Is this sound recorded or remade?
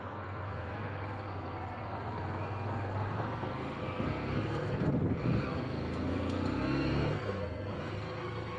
remade